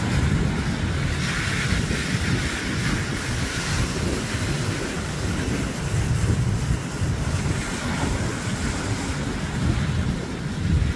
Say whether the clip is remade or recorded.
recorded